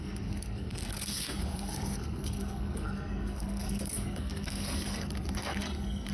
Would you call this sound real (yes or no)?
no